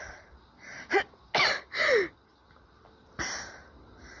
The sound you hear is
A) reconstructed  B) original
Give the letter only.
B